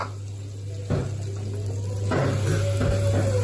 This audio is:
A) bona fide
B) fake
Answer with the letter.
A